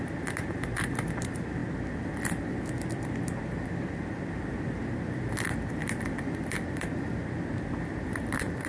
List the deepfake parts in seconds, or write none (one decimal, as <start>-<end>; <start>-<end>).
0.0-8.7

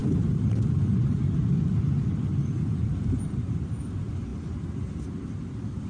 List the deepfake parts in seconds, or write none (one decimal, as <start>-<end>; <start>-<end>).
0.0-1.2; 2.4-3.2

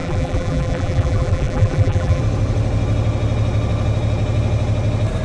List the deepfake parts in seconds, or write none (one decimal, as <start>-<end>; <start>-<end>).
0.0-2.2

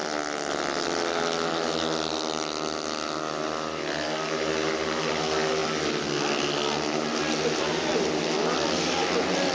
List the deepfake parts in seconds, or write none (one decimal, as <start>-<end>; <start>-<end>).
none

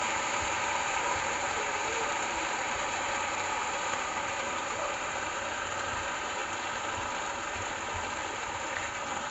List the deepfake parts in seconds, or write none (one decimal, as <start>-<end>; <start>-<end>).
0.0-6.4; 8.3-9.3

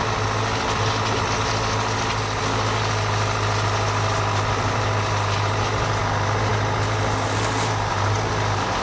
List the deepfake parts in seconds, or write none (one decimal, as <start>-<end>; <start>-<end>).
none

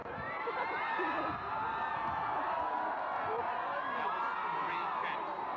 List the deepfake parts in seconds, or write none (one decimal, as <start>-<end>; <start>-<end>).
0.0-0.7